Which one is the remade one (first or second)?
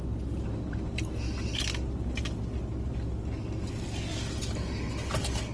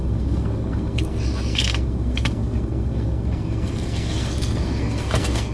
second